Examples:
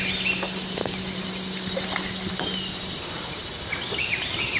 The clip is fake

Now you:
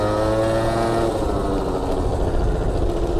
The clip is real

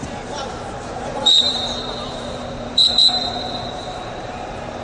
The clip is fake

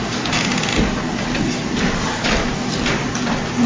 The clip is real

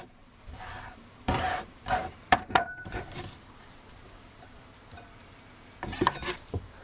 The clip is fake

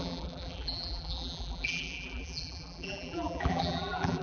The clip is fake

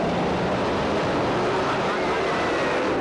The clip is fake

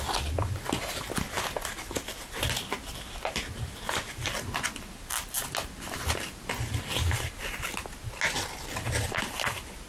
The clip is real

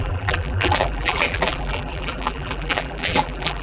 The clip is fake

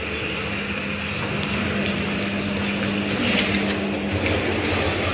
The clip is real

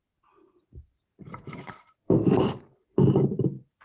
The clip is fake